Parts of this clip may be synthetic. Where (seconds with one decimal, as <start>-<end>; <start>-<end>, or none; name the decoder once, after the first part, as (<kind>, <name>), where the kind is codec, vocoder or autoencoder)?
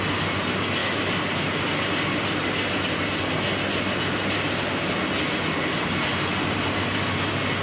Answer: none